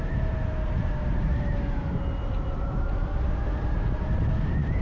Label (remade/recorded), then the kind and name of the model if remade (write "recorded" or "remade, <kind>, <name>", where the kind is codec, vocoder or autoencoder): recorded